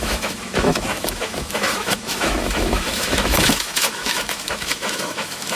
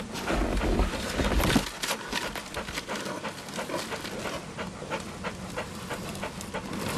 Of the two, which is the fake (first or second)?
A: first